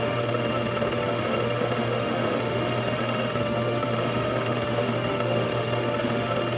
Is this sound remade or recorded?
remade